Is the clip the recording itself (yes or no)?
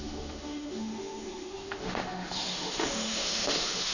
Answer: no